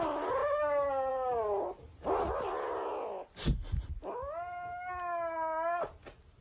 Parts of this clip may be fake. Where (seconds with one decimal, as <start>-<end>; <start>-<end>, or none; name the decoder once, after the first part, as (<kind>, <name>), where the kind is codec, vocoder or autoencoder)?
none